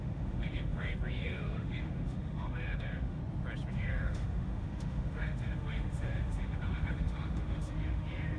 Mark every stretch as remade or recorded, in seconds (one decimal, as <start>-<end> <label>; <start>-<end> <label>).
0.0-3.2 remade; 3.2-3.7 recorded; 3.7-8.4 remade